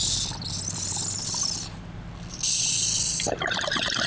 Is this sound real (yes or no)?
yes